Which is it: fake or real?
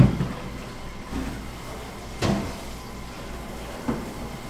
real